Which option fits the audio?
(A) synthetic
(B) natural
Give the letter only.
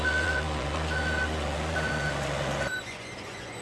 A